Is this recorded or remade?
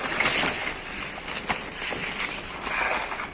recorded